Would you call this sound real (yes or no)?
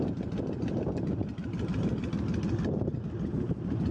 yes